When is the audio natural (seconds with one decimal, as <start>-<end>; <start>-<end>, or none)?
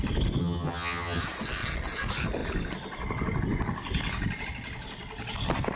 0.0-0.4; 1.2-5.8